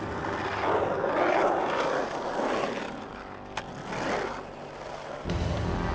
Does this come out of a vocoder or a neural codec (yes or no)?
no